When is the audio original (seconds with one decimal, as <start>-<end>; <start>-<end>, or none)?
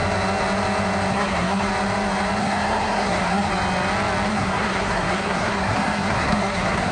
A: 0.0-1.1; 1.7-2.4; 3.5-4.3